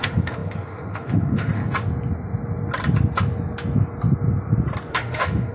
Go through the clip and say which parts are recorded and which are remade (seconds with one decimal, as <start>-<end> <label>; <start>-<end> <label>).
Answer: 0.0-1.6 remade; 1.6-4.9 recorded; 4.9-5.5 remade

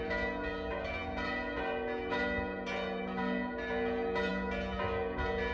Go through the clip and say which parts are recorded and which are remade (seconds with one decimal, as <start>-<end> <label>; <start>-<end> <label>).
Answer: 0.0-5.5 recorded